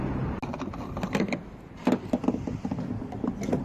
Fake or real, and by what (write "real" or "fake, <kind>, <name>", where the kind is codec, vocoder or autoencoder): real